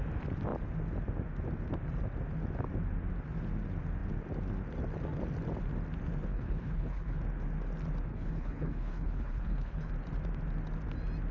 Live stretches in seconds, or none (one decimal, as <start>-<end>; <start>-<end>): 0.0-6.3; 7.2-8.1; 9.9-11.3